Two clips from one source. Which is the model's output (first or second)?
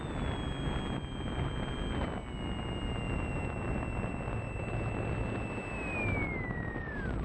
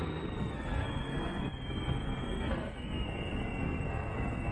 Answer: second